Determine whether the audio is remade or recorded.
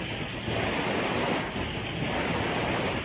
recorded